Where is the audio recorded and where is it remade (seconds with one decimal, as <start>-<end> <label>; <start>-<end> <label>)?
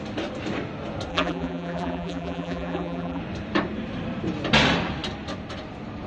0.0-1.1 recorded; 1.1-3.2 remade; 3.2-6.1 recorded